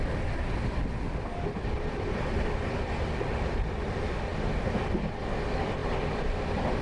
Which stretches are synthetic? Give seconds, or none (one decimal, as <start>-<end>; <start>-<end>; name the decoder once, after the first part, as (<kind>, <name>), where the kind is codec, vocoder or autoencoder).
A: none